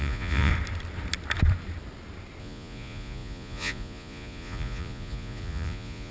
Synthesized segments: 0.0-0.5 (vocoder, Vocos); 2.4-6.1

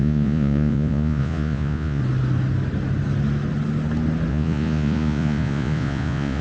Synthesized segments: 0.0-2.0 (vocoder, Vocos); 4.3-6.4

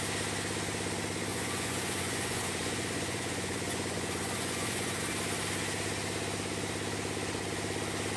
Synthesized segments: 1.3-5.0 (vocoder, Vocos)

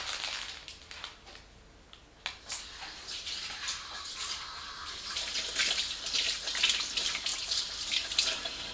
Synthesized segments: none

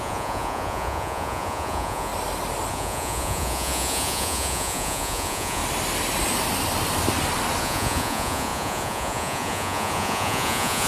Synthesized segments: 0.0-2.1 (vocoder, Vocos); 2.7-5.6; 7.6-10.9

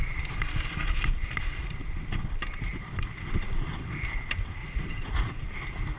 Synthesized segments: 4.6-5.4 (vocoder, Vocos)